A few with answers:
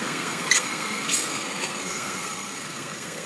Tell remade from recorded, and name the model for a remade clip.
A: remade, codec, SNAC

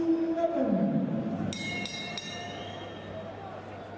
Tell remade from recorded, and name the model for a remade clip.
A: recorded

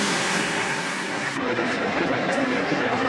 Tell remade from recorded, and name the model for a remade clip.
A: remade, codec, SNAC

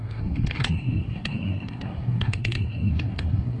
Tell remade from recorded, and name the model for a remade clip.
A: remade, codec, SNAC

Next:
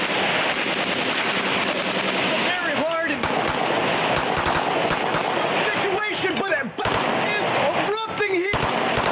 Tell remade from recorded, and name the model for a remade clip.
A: recorded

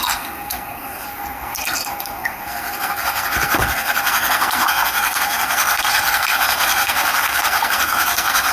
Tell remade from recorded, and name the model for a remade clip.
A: remade, codec, SNAC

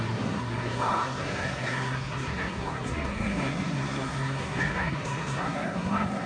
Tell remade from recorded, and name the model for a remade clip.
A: remade, codec, SNAC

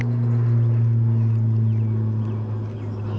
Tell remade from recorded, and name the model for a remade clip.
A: recorded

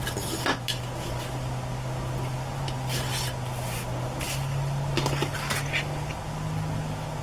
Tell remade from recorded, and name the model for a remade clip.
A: recorded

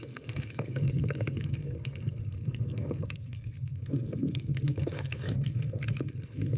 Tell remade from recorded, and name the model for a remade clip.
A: remade, codec, SNAC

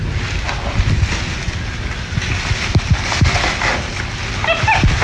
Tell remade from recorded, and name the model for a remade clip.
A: recorded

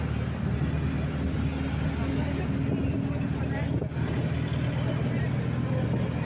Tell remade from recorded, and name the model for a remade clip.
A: recorded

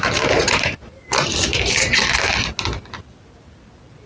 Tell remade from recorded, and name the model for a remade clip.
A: recorded